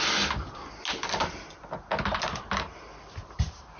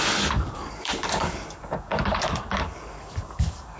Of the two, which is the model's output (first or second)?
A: second